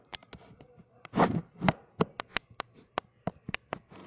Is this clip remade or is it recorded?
recorded